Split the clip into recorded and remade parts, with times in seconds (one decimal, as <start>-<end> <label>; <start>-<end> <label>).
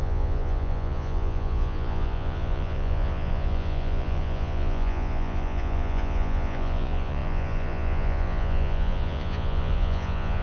0.0-10.4 remade